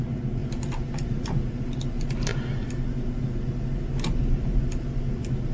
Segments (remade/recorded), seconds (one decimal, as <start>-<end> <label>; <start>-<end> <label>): 0.0-5.5 recorded